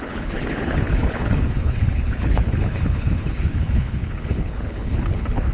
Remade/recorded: remade